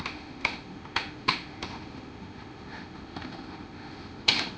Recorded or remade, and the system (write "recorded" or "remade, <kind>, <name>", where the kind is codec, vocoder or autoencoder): remade, autoencoder, DAC-VAE